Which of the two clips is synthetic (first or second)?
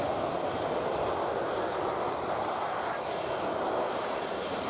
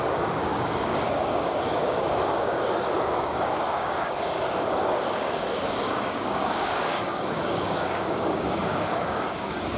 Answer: second